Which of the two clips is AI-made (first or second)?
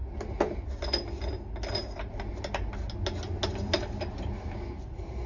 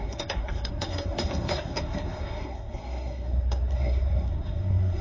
second